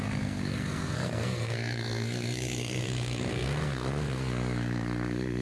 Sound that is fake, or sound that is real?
fake